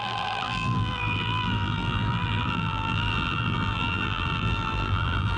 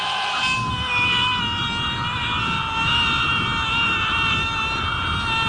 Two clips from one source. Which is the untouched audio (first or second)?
second